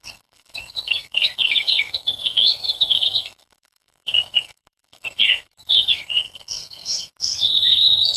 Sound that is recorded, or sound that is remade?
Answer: remade